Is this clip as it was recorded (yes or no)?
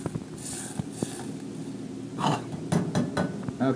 yes